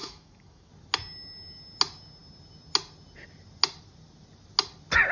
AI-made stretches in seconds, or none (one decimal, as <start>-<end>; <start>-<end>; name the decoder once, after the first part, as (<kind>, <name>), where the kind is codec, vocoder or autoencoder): 0.0-0.7 (autoencoder, DAC-VAE)